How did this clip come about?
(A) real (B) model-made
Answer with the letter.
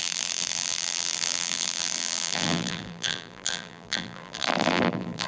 B